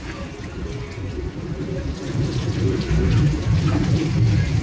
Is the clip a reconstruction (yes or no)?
no